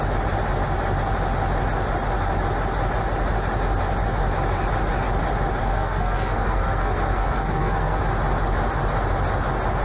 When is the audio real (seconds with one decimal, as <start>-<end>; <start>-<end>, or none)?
0.0-5.6; 8.0-9.8

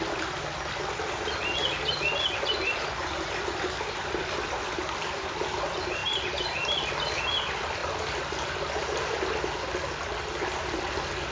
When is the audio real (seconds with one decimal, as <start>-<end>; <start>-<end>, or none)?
0.0-11.3

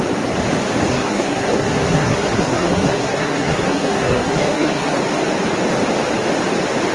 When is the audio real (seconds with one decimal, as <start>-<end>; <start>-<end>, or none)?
0.0-0.9; 5.0-6.9